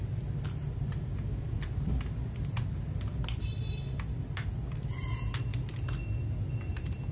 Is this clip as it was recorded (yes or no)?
yes